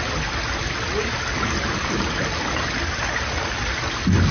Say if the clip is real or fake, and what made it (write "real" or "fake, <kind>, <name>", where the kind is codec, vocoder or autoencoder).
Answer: real